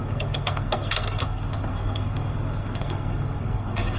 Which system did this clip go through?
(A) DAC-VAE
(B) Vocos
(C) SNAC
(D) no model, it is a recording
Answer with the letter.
C